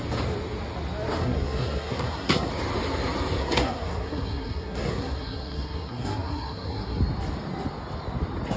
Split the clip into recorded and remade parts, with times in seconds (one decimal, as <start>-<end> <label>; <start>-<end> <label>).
0.0-1.2 recorded; 1.2-2.5 remade; 2.5-3.4 recorded; 3.4-7.0 remade; 7.0-8.6 recorded